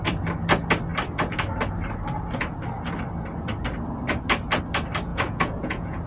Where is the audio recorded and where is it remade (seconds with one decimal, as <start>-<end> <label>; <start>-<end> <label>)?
0.0-5.1 recorded; 5.1-6.1 remade

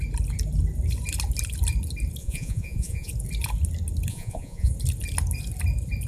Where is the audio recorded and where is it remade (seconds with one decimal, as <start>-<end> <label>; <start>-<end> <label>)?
0.0-2.2 recorded; 2.2-3.1 remade; 3.1-4.1 recorded; 4.1-4.7 remade; 4.7-6.1 recorded

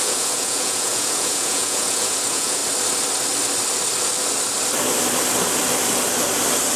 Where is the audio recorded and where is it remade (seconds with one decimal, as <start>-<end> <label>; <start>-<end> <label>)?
0.0-2.6 remade; 2.6-6.8 recorded

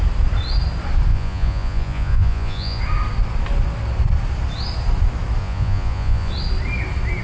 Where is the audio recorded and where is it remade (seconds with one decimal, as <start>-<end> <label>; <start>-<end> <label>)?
0.0-1.1 recorded; 1.1-2.8 remade; 2.8-5.4 recorded; 5.4-6.3 remade; 6.3-7.2 recorded

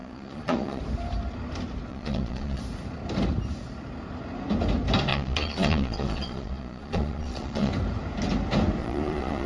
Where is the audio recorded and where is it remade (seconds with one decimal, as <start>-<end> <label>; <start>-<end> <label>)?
0.0-0.8 remade; 0.8-1.9 recorded; 1.9-2.6 remade; 2.6-5.1 recorded; 5.1-7.7 remade; 7.7-8.8 recorded; 8.8-9.5 remade

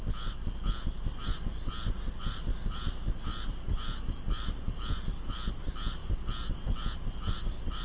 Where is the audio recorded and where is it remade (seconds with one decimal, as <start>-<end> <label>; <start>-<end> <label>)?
0.0-7.8 recorded